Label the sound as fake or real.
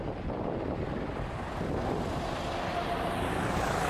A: real